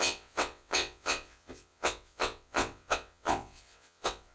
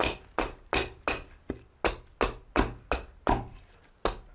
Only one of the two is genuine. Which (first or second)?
second